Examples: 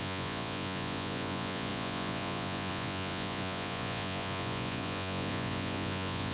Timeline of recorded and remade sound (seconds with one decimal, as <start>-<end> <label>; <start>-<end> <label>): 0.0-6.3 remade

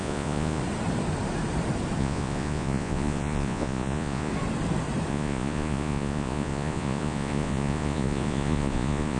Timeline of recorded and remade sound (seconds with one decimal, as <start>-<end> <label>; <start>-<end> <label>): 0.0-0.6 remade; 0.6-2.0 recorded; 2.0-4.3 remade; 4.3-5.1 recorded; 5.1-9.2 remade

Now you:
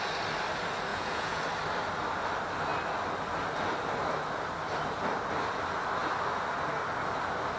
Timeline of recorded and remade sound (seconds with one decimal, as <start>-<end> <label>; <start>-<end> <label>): 0.0-0.9 recorded; 0.9-1.4 remade; 1.4-7.6 recorded

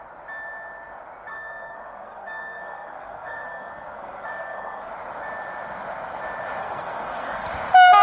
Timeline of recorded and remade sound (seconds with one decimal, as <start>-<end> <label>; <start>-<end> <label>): 0.0-1.3 recorded; 1.3-4.9 remade; 4.9-6.6 recorded; 6.6-7.5 remade; 7.5-8.0 recorded